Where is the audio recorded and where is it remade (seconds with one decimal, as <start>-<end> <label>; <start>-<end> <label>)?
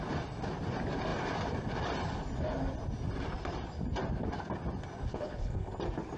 0.0-5.1 recorded; 5.1-5.7 remade; 5.7-6.2 recorded